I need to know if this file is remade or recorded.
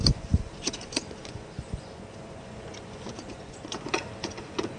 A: remade